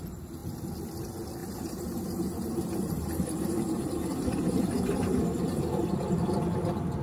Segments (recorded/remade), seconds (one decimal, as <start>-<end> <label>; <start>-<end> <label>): 0.0-1.4 recorded; 1.4-5.6 remade; 5.6-7.0 recorded